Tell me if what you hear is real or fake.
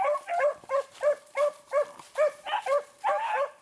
fake